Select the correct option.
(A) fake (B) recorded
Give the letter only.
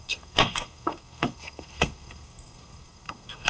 A